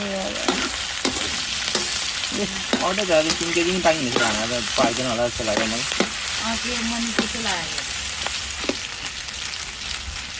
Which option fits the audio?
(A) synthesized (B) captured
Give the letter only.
B